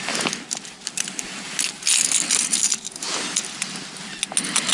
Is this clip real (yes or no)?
yes